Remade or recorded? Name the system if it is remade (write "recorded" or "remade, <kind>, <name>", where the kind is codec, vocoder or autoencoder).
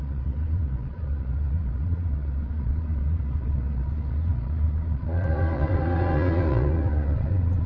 remade, vocoder, Vocos